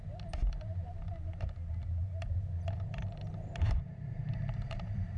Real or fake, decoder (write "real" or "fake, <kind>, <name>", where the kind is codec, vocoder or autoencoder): fake, vocoder, BigVGAN v2